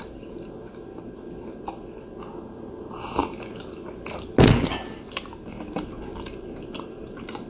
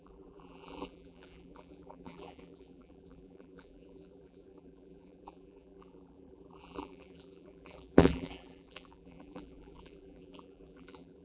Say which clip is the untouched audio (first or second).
first